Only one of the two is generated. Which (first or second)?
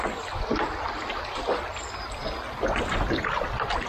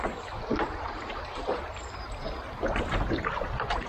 second